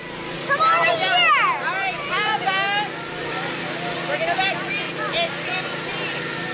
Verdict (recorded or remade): recorded